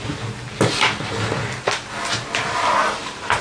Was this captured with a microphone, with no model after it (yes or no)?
yes